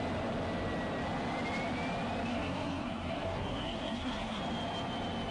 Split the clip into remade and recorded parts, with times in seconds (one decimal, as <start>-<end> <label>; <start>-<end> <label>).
0.0-2.3 recorded; 2.3-4.4 remade; 4.4-5.3 recorded